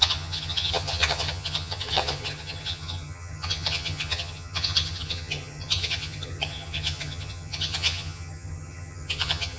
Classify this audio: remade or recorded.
remade